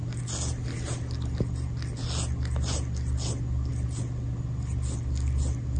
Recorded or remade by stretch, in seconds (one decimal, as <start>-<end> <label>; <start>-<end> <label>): 0.0-5.8 recorded